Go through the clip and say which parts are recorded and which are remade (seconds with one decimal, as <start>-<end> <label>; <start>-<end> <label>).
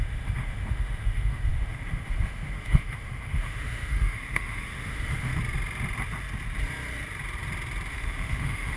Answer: 0.0-5.3 remade; 5.3-7.9 recorded; 7.9-8.8 remade